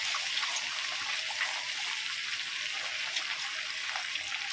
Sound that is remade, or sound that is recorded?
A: recorded